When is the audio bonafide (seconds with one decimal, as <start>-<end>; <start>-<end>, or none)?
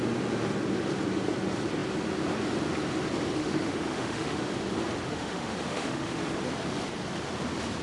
0.0-3.4; 4.5-5.1; 6.2-7.8